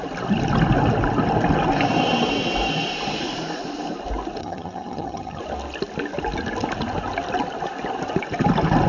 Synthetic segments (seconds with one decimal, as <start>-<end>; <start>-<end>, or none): 4.4-5.4